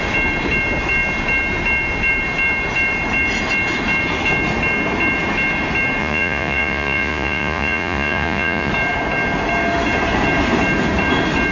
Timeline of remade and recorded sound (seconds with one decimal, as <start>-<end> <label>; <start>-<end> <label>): 0.0-6.0 recorded; 6.0-8.7 remade; 8.7-11.5 recorded